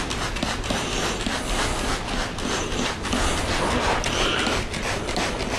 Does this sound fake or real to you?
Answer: real